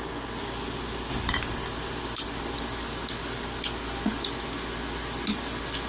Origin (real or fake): real